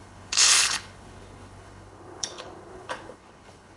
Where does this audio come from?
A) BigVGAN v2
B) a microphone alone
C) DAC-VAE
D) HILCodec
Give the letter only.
D